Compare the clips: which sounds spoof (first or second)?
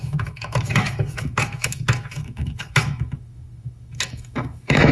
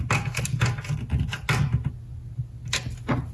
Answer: first